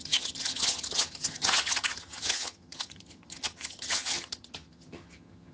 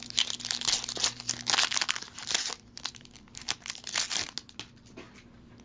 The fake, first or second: first